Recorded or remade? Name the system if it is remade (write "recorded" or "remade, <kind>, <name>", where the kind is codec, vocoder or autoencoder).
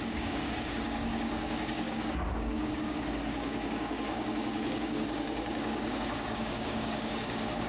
remade, codec, DAC